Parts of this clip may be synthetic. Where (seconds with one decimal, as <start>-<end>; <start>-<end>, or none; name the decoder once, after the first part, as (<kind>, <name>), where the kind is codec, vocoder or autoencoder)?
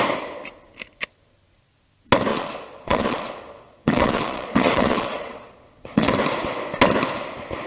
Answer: 2.3-6.1 (vocoder, Vocos)